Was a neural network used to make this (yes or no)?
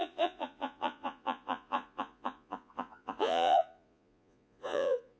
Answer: yes